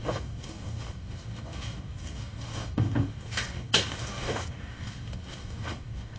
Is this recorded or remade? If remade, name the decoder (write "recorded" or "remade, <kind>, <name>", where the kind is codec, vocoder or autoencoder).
remade, codec, DAC